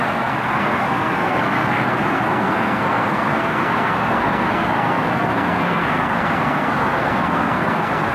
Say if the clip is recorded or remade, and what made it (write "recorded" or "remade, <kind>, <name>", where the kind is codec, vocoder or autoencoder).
remade, codec, SNAC